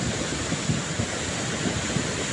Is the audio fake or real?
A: real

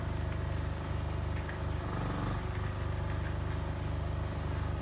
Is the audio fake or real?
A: real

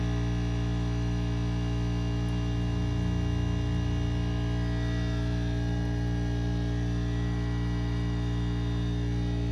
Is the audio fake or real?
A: real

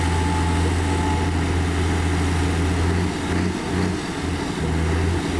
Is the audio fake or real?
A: real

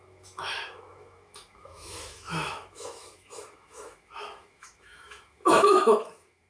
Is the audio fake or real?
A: fake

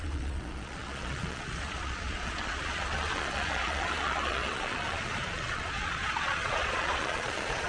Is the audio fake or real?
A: fake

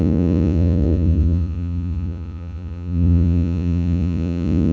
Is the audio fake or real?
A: fake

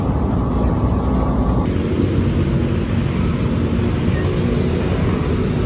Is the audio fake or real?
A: real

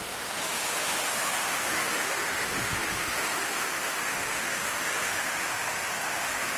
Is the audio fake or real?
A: fake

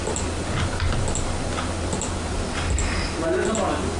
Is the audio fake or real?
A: real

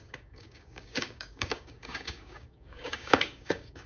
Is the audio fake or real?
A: fake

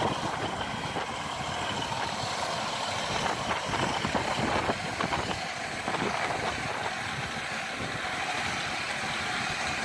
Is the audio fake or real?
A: real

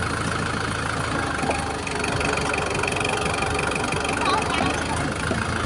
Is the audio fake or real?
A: real